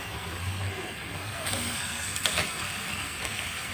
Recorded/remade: remade